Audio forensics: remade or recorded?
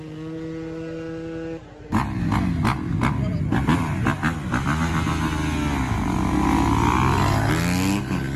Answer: recorded